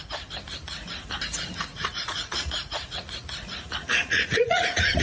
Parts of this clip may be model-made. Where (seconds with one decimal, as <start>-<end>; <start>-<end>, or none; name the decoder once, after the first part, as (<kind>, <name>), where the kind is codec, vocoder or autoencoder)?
1.7-5.0 (vocoder, Vocos)